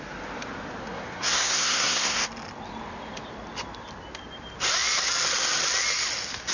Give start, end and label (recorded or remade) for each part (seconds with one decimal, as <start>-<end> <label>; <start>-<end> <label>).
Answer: 0.0-0.8 recorded; 0.8-2.3 remade; 2.3-6.5 recorded